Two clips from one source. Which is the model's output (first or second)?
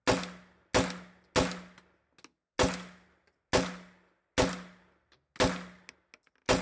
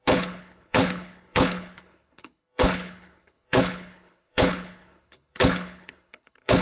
second